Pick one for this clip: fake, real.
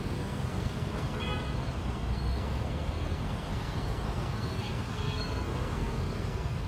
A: fake